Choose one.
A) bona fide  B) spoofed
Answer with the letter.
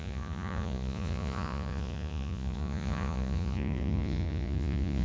B